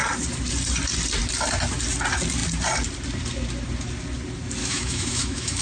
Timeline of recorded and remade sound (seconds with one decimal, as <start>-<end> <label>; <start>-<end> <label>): 0.0-4.6 recorded; 4.6-5.6 remade